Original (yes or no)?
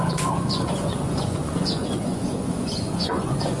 no